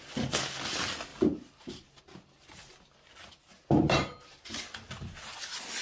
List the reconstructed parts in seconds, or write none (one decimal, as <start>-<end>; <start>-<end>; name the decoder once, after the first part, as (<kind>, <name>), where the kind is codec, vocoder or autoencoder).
1.1-2.0 (vocoder, BigVGAN v2)